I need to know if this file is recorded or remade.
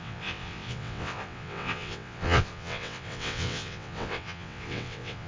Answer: remade